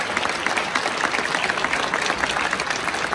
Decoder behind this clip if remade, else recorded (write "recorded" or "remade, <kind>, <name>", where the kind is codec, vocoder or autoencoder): recorded